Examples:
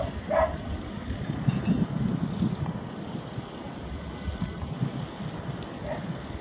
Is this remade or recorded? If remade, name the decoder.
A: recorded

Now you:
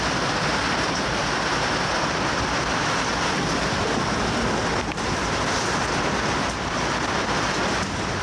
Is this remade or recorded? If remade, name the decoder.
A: recorded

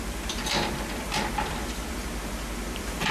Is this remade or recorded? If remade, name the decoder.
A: remade, vocoder, BigVGAN v2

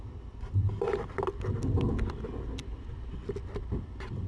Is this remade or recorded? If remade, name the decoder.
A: recorded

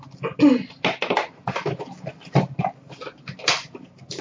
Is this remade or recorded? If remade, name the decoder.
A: recorded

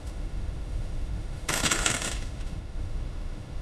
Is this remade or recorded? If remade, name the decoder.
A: remade, autoencoder, DAC-VAE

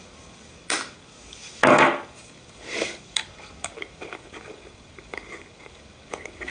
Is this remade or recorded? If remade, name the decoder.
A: remade, codec, DAC